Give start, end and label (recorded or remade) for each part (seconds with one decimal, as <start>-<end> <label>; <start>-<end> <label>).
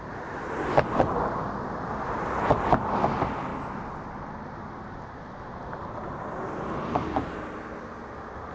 0.0-8.5 recorded